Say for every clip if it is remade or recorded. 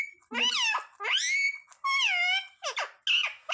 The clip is recorded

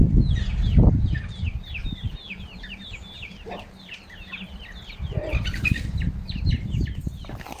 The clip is recorded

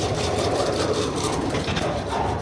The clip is remade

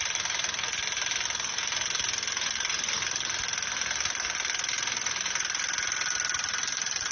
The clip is recorded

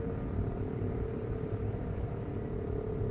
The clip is remade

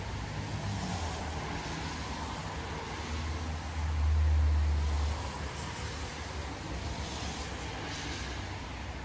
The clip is recorded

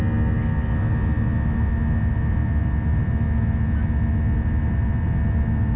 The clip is recorded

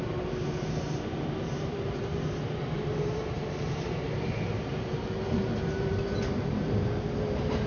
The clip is remade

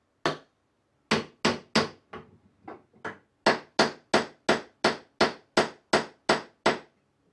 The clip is recorded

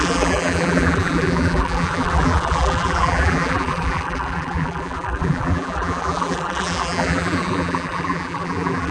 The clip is remade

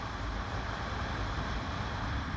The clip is remade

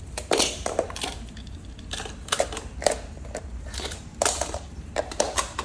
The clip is remade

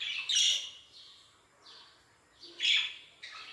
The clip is recorded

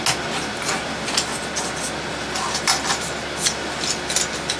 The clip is recorded